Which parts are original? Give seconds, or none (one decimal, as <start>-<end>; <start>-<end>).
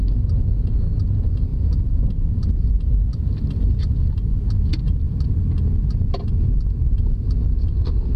0.0-1.5; 4.0-8.2